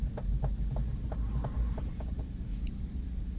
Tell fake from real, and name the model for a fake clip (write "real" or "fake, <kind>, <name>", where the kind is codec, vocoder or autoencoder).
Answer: real